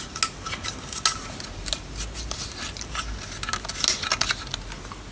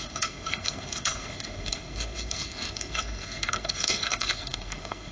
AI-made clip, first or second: second